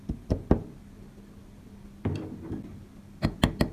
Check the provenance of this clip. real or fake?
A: real